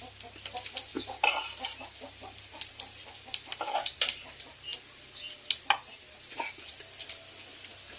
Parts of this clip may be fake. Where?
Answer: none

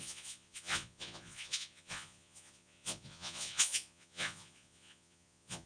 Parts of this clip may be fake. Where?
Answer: 0.0-5.7 (vocoder, Vocos)

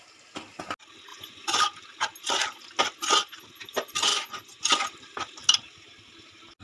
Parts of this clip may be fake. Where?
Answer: 1.1-1.6 (vocoder, Vocos); 4.1-4.6

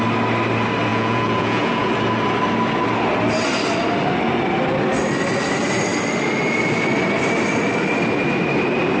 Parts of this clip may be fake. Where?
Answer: 0.9-1.9 (vocoder, Vocos)

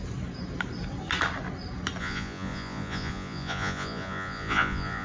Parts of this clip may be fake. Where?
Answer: 2.0-5.0 (vocoder, Vocos)

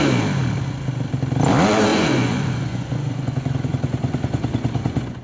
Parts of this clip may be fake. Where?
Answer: 1.9-5.2 (vocoder, Vocos)

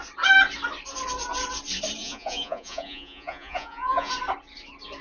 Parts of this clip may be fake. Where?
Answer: 2.0-4.1 (vocoder, Vocos)

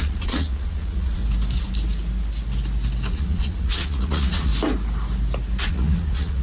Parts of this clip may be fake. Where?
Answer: 0.0-1.2 (vocoder, Vocos); 3.1-4.5; 5.6-6.4